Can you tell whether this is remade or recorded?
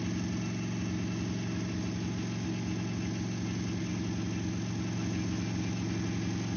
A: recorded